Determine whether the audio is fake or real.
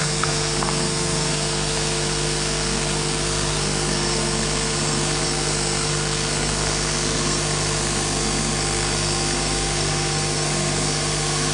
fake